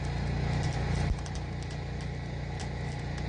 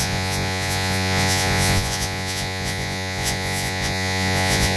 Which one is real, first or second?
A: first